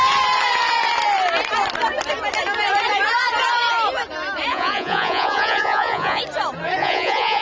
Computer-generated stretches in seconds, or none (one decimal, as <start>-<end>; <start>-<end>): 4.5-6.2; 6.8-7.4